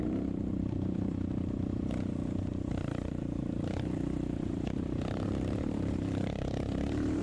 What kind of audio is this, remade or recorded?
remade